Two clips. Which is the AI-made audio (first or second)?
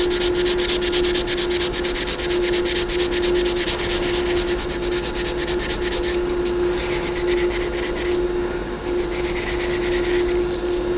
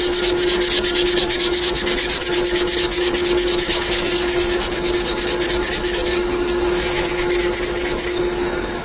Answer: second